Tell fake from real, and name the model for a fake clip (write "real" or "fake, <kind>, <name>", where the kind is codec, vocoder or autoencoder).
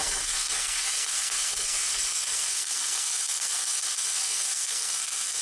fake, codec, SNAC